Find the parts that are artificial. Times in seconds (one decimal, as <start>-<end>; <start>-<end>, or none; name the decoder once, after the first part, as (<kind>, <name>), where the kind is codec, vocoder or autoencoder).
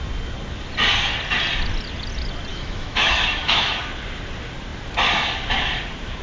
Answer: 2.5-3.7 (autoencoder, DAC-VAE)